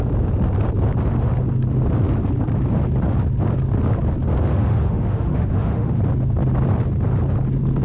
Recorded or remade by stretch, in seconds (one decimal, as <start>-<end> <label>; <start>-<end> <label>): 0.0-4.5 recorded; 4.5-6.0 remade; 6.0-7.8 recorded